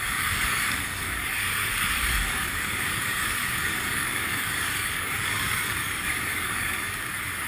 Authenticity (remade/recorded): remade